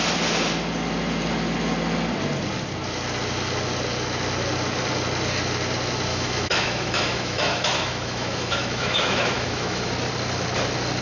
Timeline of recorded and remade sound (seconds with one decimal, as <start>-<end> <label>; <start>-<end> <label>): 0.0-6.1 recorded; 6.1-9.9 remade; 9.9-11.0 recorded